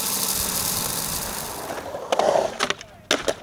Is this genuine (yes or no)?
yes